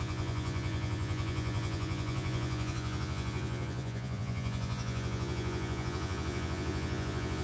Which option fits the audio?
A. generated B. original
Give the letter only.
A